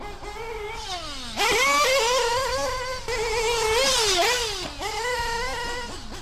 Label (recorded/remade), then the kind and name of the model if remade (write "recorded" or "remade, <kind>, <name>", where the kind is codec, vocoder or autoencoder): recorded